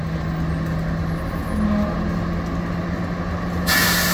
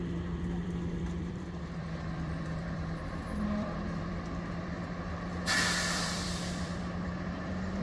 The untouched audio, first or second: first